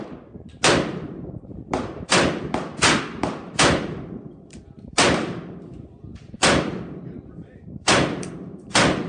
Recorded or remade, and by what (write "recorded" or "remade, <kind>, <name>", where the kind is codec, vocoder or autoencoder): remade, vocoder, BigVGAN v2